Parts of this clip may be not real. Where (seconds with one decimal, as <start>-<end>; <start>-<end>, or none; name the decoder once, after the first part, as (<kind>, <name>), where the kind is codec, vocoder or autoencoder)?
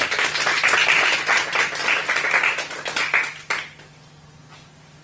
none